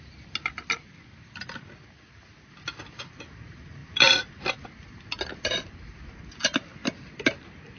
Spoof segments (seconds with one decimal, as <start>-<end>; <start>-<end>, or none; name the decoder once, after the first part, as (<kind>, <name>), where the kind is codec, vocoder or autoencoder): 3.8-4.5 (vocoder, BigVGAN v2); 6.6-7.8